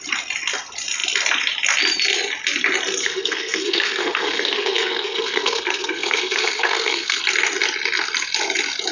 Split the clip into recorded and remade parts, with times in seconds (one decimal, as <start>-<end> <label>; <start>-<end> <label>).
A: 0.0-3.0 recorded; 3.0-7.2 remade; 7.2-8.9 recorded